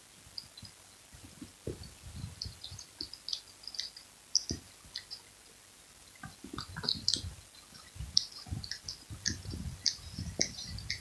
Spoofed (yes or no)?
no